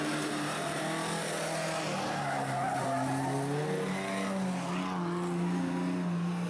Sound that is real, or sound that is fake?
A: real